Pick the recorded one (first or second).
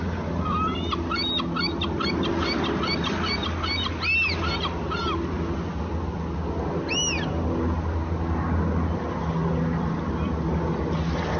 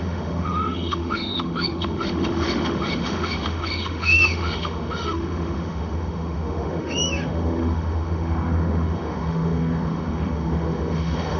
first